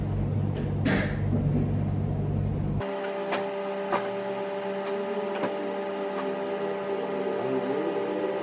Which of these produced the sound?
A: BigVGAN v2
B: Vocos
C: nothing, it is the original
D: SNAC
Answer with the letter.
C